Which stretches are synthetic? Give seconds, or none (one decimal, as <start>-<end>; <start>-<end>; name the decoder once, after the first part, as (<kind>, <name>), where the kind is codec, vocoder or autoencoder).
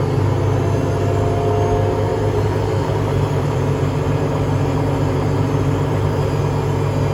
2.1-6.4 (vocoder, BigVGAN v2)